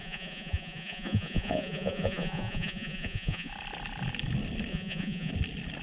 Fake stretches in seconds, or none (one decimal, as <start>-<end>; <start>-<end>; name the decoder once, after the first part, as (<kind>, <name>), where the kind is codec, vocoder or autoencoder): 0.0-3.5 (vocoder, Vocos); 4.7-5.3